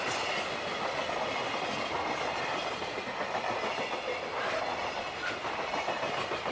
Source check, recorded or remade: recorded